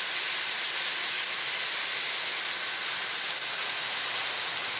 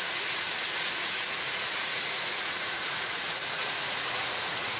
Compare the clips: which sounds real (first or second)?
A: first